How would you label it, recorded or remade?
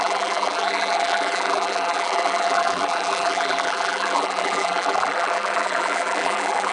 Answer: remade